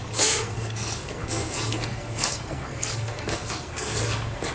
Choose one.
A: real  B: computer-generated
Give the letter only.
B